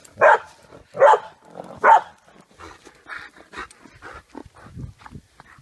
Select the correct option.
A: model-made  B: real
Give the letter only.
B